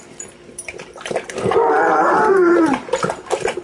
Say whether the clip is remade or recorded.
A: recorded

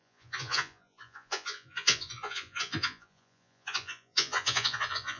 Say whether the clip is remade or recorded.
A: remade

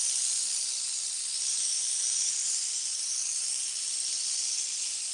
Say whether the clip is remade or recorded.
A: remade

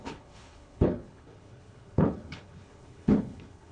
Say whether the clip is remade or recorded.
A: remade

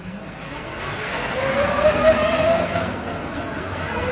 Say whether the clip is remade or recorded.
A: remade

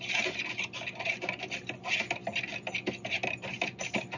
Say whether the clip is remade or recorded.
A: recorded